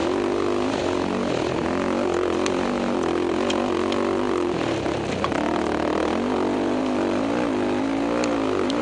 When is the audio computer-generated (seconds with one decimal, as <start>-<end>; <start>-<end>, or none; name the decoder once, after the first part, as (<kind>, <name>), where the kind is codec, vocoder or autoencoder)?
none